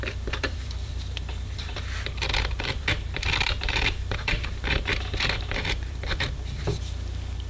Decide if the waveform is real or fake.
fake